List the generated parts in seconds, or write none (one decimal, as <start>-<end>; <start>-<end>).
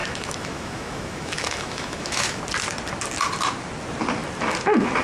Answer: 0.0-2.4